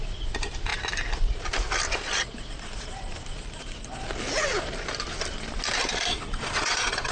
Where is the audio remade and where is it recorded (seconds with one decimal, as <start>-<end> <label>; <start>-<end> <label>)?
0.0-6.1 recorded; 6.1-7.1 remade